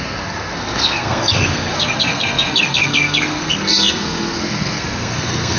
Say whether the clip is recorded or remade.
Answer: remade